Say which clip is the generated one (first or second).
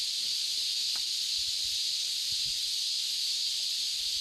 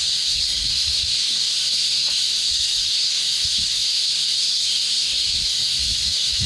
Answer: second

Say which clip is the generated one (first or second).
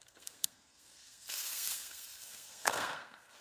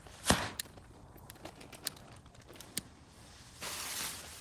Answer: first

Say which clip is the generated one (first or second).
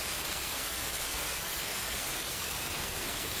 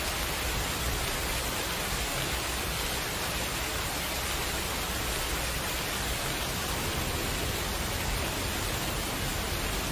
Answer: first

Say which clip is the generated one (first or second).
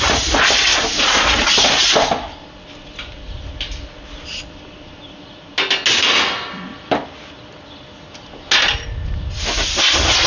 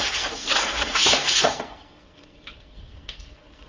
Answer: second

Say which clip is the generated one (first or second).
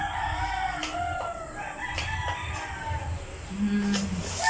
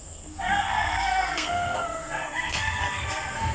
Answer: second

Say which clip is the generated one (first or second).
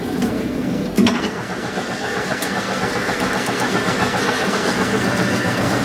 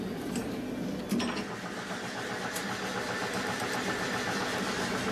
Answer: first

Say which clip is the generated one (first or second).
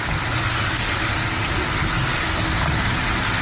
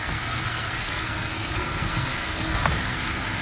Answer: second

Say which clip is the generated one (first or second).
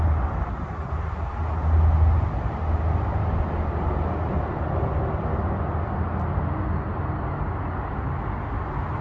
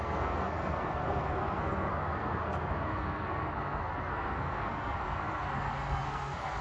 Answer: second